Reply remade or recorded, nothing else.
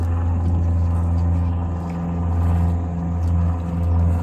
recorded